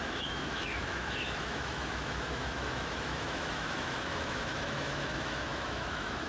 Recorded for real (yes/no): no